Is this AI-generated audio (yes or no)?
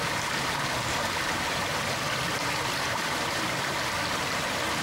no